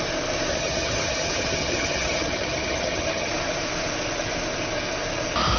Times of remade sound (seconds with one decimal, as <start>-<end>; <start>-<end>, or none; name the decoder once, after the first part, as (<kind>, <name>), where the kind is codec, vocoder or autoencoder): 0.5-3.3 (vocoder, HiFi-GAN)